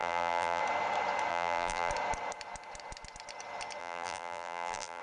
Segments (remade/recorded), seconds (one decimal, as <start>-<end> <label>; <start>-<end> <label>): 0.0-0.6 remade; 0.6-1.3 recorded; 1.3-1.9 remade; 1.9-3.8 recorded; 3.8-5.0 remade